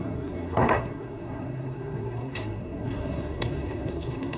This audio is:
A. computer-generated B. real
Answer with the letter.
A